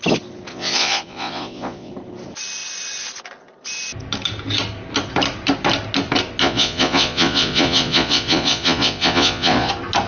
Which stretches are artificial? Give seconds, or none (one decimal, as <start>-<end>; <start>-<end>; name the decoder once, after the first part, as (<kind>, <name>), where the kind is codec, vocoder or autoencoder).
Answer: 0.5-1.9 (vocoder, Vocos); 6.4-9.7